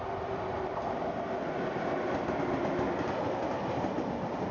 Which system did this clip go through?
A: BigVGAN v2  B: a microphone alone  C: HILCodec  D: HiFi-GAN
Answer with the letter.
B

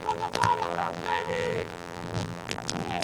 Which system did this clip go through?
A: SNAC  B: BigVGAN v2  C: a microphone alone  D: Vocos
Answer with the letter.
B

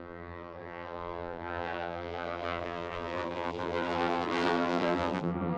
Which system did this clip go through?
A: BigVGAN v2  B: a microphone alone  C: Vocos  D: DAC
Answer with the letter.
A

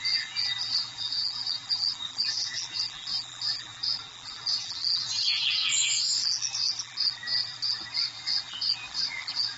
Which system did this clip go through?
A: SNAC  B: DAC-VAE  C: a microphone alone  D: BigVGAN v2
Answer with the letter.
D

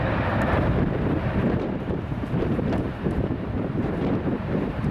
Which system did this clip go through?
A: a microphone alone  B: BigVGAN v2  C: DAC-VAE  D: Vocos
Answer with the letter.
B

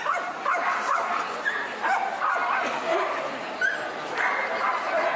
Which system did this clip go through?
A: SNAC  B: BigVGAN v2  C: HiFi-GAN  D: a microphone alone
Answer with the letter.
D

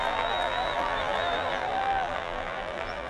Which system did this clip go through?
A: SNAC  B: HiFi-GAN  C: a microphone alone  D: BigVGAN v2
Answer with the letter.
D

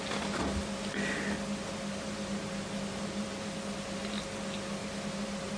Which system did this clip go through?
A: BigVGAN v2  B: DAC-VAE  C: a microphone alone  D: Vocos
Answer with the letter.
C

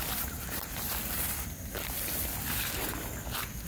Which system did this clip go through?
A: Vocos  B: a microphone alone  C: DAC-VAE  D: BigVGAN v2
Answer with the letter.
D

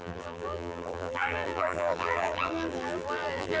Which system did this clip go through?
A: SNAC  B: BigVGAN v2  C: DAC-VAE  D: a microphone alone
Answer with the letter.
B